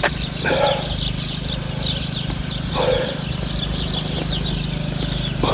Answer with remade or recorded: recorded